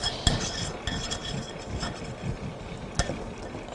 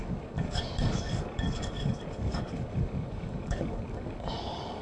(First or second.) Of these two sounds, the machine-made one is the second